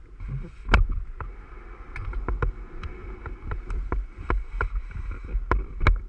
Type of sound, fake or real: real